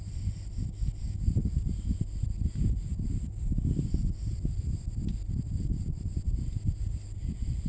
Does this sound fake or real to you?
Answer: real